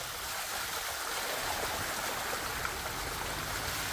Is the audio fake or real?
real